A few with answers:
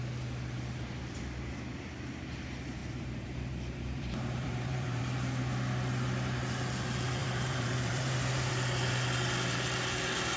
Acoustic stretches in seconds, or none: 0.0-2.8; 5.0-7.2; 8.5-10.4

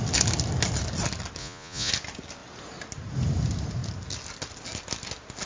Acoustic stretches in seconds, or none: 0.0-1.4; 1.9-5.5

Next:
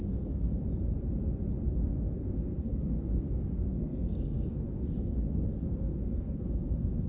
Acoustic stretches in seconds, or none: 0.6-1.7